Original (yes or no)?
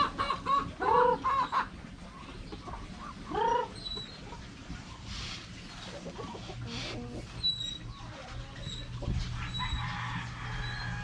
yes